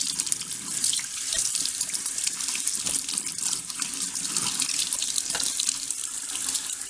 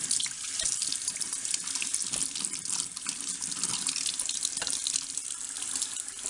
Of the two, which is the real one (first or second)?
second